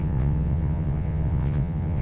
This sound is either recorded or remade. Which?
remade